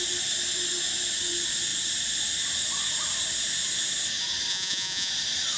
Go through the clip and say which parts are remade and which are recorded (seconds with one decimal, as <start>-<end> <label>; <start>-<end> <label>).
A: 0.0-4.5 recorded; 4.5-5.1 remade; 5.1-5.6 recorded